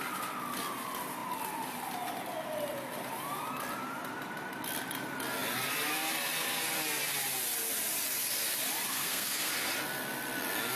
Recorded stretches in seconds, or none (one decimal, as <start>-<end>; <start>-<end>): 0.0-8.9; 9.5-10.8